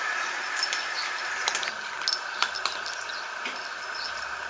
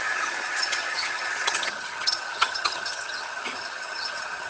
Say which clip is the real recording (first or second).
first